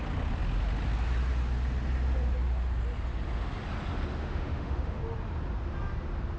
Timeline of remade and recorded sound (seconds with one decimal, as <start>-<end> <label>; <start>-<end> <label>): 0.0-4.2 recorded; 4.2-5.0 remade; 5.0-6.4 recorded